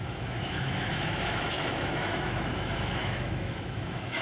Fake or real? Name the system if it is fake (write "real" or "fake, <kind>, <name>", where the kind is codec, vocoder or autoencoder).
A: fake, autoencoder, DAC-VAE